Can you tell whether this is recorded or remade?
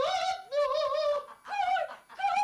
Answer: recorded